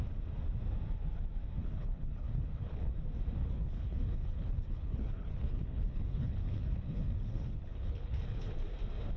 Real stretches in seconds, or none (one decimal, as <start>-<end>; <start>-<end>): 0.0-1.6; 2.9-3.4; 8.5-9.2